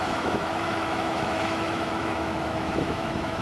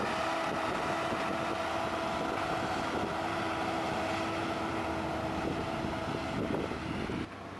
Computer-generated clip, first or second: first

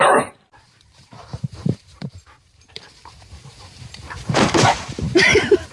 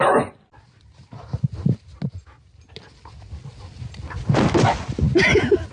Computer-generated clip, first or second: first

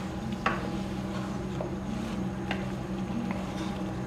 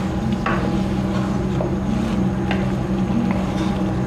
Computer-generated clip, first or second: first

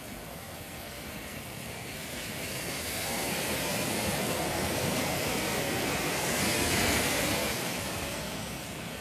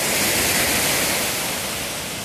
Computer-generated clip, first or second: first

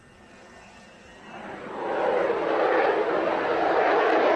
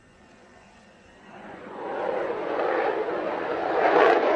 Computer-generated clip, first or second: second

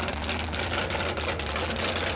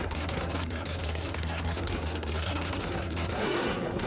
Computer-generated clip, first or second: second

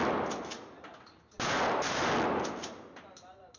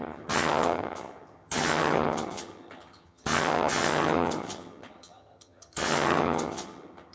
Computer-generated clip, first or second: second